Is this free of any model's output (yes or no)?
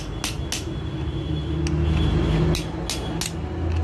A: yes